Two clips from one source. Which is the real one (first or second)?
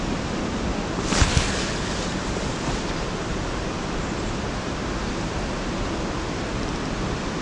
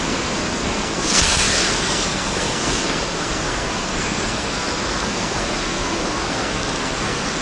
first